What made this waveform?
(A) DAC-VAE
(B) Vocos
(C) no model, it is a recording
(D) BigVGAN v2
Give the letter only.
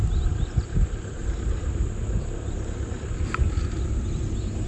C